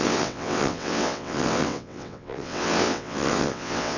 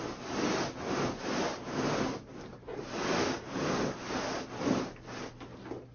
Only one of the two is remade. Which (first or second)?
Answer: first